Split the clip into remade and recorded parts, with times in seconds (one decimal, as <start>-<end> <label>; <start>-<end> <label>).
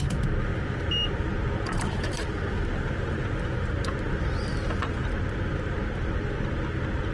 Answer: 0.0-7.1 recorded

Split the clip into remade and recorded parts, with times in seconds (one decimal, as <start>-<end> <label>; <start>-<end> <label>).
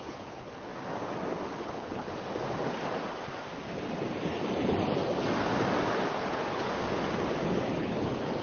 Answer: 0.0-0.7 remade; 0.7-1.6 recorded; 1.6-2.1 remade; 2.1-6.1 recorded; 6.1-6.7 remade; 6.7-7.8 recorded; 7.8-8.4 remade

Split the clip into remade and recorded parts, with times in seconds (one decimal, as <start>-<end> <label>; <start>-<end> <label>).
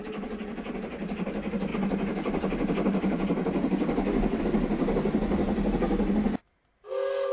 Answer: 0.0-7.3 recorded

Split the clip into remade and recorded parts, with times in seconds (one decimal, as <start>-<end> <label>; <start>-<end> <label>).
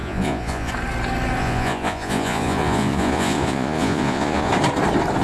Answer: 0.0-0.7 remade; 0.7-1.4 recorded; 1.4-4.5 remade; 4.5-5.2 recorded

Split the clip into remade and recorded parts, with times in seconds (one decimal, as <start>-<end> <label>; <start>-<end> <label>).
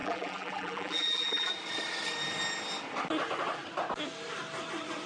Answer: 0.0-1.5 remade; 1.5-5.1 recorded